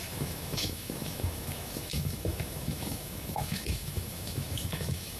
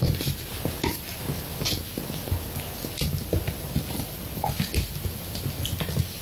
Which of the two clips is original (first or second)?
second